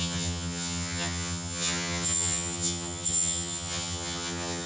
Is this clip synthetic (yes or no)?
yes